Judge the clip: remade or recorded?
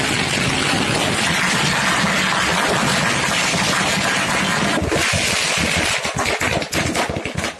recorded